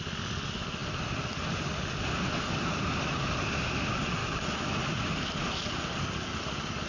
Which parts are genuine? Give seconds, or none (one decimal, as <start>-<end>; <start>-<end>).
0.0-4.2; 4.8-6.9